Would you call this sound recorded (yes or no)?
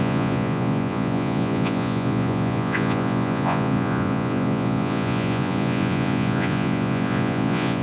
no